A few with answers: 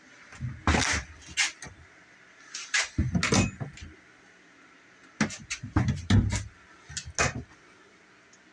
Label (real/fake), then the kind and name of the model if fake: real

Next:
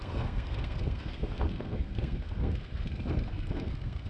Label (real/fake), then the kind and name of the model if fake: fake, codec, SNAC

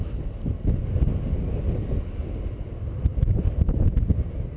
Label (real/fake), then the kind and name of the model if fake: real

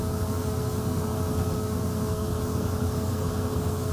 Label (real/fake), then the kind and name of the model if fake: fake, codec, SNAC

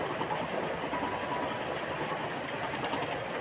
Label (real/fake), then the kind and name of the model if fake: real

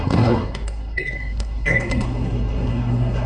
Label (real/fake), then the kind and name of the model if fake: fake, codec, SNAC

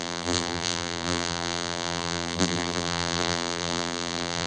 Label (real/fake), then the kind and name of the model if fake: fake, vocoder, BigVGAN v2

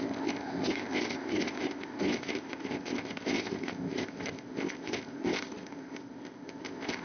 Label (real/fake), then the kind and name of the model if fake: fake, codec, ZipCodec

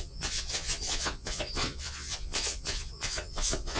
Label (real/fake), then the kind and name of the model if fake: fake, vocoder, Vocos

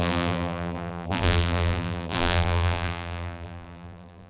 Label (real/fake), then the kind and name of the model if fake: fake, vocoder, BigVGAN v2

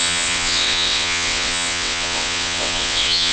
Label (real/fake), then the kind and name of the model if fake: fake, vocoder, WaveNeXt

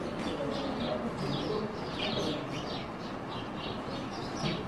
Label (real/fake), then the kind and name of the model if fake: real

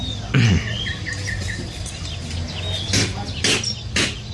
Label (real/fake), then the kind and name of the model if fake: real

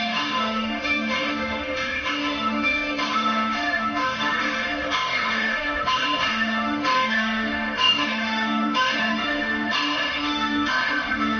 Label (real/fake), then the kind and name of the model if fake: fake, autoencoder, DAC-VAE